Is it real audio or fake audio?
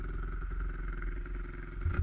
real